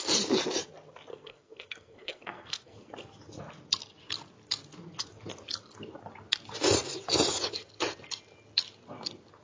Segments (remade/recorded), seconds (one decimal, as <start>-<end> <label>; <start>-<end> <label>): 0.0-1.1 recorded; 1.1-2.9 remade; 2.9-9.4 recorded